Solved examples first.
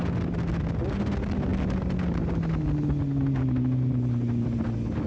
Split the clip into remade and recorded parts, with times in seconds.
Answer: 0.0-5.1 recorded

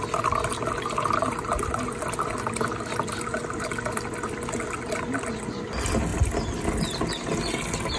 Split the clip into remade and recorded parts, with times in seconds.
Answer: 0.0-8.0 recorded